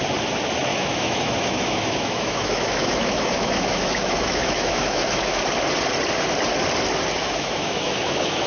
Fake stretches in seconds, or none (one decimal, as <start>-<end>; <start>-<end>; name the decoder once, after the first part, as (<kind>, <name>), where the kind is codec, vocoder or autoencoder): 0.7-5.4 (autoencoder, DAC-VAE); 7.2-8.5